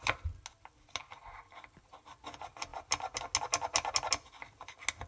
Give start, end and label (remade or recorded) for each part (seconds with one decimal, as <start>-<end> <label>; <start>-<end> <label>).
0.0-5.1 recorded